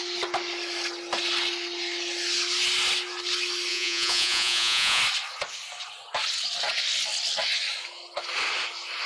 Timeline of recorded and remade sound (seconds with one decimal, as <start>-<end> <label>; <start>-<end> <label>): 0.0-3.7 recorded; 3.7-5.0 remade; 5.0-9.1 recorded